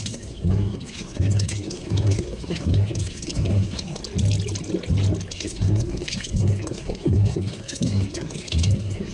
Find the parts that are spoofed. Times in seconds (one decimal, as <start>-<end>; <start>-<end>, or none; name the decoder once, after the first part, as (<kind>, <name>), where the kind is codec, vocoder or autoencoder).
0.0-4.0 (codec, SNAC); 5.3-9.1